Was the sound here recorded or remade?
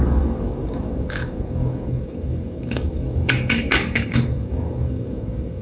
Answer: remade